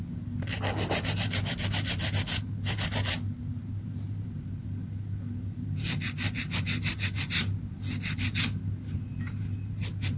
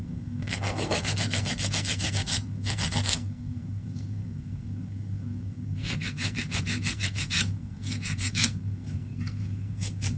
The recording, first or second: first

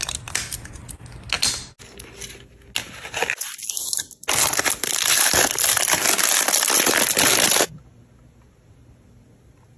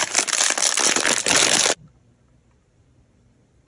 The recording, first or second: first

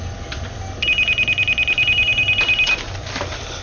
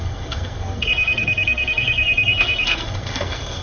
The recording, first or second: first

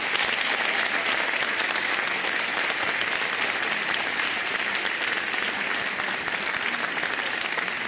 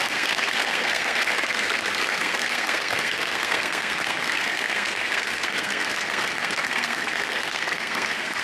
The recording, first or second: first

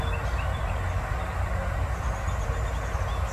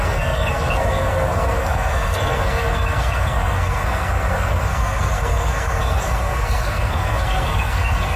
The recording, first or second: first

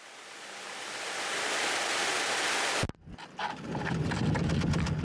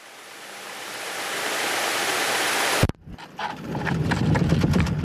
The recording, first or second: first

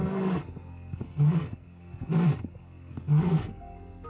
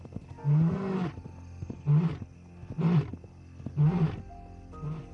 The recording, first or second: second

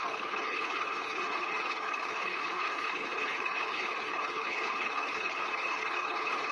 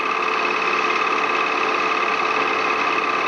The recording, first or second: second